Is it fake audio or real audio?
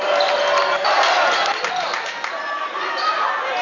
real